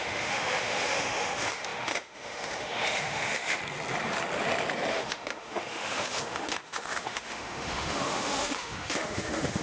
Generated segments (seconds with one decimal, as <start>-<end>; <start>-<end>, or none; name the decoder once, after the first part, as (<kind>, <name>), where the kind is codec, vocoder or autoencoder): 0.0-3.6 (autoencoder, DAC-VAE); 4.9-9.6